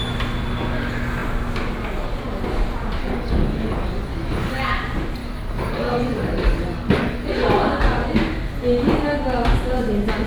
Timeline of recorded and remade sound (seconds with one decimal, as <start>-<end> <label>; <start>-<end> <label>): 0.0-3.0 recorded; 3.0-4.8 remade; 4.8-5.2 recorded; 5.2-7.3 remade; 7.3-10.3 recorded